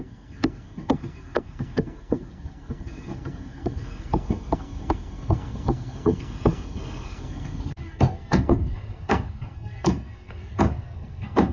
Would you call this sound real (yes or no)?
no